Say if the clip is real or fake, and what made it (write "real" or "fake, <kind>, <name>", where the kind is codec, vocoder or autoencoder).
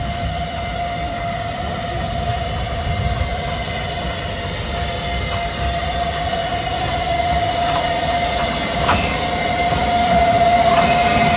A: real